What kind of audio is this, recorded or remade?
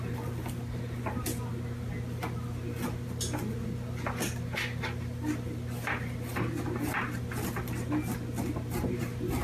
recorded